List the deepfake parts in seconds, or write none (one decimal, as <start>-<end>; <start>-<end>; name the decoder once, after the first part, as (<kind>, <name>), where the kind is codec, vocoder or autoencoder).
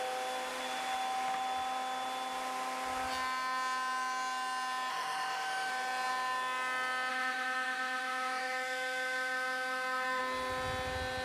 4.9-5.7 (autoencoder, DAC-VAE); 7.1-10.2